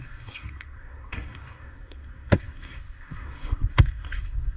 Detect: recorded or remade remade